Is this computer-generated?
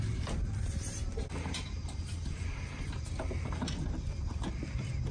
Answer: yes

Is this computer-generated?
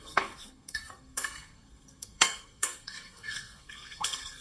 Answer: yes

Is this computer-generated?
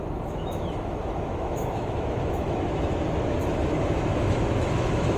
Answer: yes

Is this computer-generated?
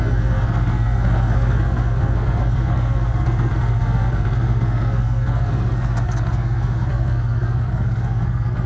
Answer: yes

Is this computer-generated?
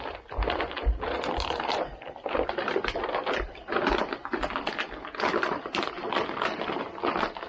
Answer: no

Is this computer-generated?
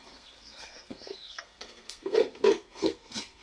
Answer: yes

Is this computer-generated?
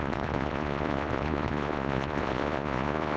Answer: yes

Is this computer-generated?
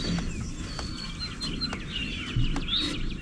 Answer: no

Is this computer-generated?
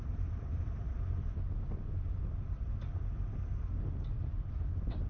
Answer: yes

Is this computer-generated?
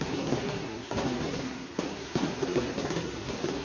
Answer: yes